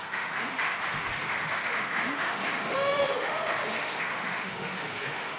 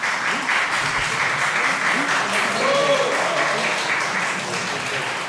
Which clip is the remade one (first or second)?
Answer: first